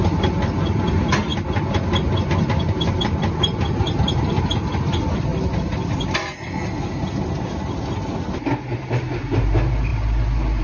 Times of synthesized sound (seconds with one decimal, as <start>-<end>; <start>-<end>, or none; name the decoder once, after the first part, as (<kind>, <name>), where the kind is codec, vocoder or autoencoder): none